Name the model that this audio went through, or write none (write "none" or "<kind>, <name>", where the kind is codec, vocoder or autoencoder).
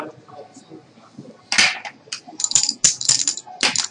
none